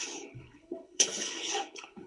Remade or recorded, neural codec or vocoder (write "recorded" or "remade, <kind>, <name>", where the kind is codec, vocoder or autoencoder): remade, codec, HILCodec